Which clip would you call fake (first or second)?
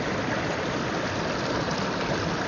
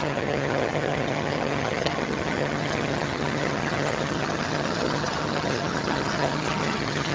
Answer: second